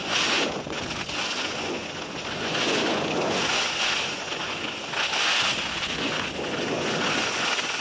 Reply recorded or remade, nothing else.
remade